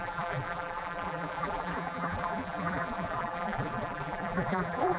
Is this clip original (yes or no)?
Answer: no